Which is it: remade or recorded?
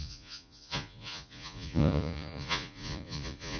remade